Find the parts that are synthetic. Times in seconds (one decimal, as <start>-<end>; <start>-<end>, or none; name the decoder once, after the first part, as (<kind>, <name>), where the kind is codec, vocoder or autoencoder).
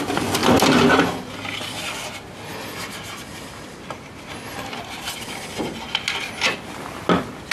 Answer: none